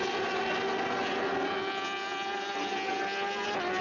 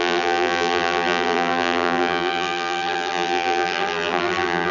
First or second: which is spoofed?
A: second